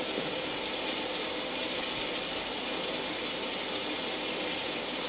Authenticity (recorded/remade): recorded